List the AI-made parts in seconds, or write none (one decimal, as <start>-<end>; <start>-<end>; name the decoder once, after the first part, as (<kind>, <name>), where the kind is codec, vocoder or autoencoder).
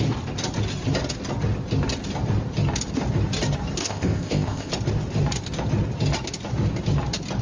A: 3.8-4.7 (codec, ZipCodec)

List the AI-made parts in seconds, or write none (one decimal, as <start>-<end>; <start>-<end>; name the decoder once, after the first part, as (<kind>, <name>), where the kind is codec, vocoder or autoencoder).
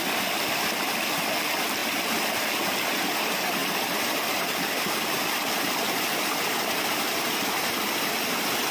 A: 3.6-8.1 (vocoder, BigVGAN v2)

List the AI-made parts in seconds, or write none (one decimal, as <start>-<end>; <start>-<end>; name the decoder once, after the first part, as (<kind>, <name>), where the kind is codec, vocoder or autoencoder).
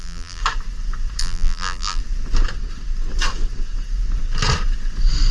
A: 0.0-0.4 (vocoder, BigVGAN v2); 1.2-2.0